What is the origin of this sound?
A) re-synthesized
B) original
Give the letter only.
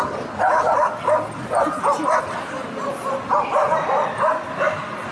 B